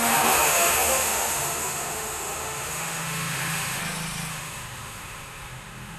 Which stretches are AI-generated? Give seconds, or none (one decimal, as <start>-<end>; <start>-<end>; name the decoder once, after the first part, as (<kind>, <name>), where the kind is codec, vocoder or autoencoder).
0.0-3.8 (autoencoder, DAC-VAE); 4.3-6.0